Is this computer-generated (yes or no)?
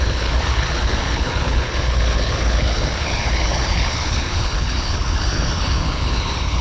yes